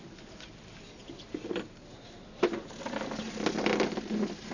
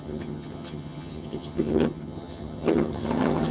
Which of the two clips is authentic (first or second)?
first